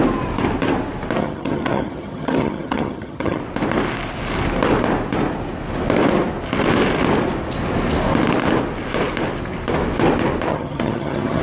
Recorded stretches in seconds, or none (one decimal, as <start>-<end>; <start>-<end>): 0.0-1.2; 3.4-10.5